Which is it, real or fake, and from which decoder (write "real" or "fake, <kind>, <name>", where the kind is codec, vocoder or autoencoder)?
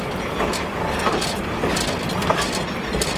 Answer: real